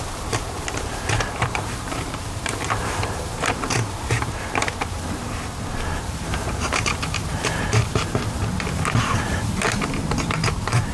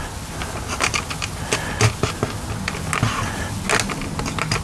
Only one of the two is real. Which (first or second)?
second